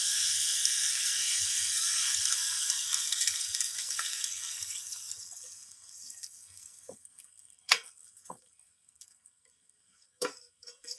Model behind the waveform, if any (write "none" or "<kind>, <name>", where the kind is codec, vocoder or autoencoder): codec, SNAC